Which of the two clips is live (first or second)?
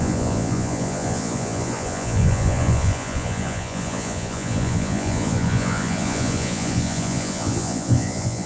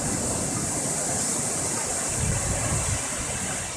second